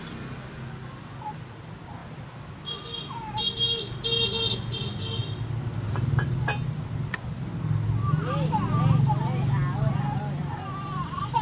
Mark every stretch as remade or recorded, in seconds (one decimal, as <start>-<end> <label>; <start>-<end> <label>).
0.0-11.4 recorded